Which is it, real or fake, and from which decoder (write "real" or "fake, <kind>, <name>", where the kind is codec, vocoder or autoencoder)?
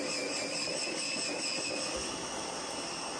real